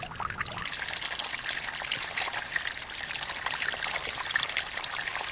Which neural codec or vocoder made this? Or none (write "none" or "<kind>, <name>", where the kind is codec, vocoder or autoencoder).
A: none